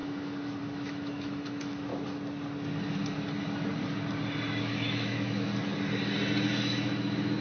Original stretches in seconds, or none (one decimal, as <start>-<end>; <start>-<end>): 1.9-4.6; 5.5-6.6